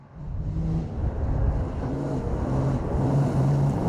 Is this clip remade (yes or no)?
no